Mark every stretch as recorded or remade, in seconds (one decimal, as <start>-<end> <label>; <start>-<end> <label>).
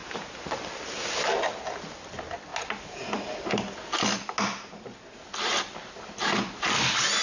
0.0-7.2 recorded